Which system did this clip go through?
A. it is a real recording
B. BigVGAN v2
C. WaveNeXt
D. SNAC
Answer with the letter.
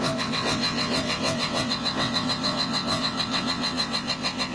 C